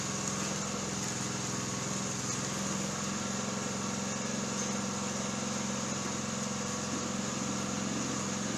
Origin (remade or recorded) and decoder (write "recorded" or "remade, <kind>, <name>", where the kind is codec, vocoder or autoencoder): recorded